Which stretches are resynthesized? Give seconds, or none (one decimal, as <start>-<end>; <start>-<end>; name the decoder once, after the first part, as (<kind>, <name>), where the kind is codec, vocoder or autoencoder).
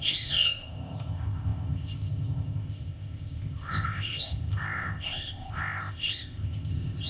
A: 0.0-7.1 (codec, ZipCodec)